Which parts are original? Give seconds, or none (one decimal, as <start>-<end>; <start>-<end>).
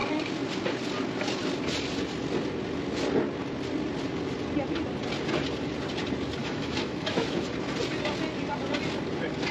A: 0.0-6.4; 7.5-9.5